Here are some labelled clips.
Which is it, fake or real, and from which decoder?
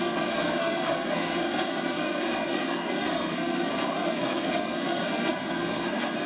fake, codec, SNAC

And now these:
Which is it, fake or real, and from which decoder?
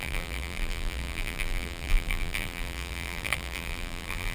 fake, vocoder, BigVGAN v2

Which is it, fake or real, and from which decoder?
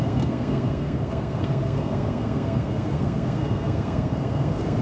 fake, codec, SNAC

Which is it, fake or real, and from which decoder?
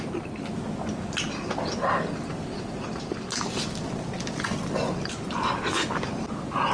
real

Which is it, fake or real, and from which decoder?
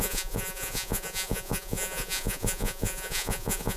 fake, vocoder, Vocos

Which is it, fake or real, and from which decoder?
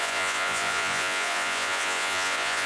fake, vocoder, Vocos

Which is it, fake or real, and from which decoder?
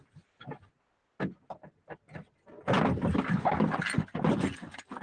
real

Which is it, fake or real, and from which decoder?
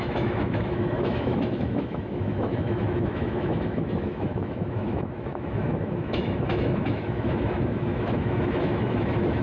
fake, autoencoder, DAC-VAE